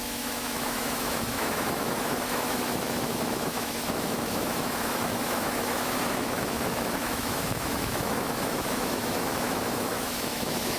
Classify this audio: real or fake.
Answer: fake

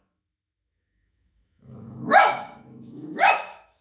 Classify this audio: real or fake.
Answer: fake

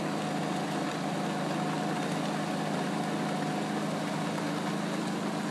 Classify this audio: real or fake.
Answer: real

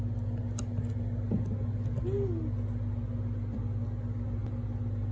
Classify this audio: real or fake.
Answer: real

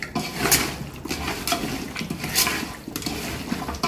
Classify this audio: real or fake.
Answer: real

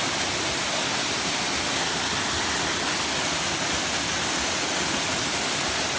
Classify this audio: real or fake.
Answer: real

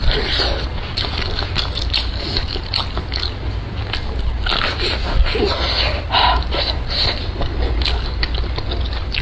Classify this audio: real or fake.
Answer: real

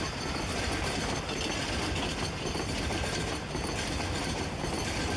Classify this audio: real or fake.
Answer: real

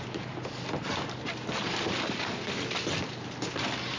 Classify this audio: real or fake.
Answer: real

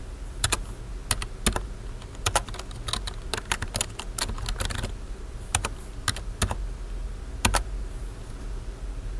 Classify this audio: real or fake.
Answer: real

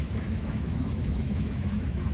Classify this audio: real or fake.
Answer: fake